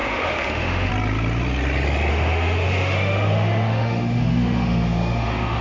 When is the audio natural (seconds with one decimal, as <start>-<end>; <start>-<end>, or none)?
0.9-2.1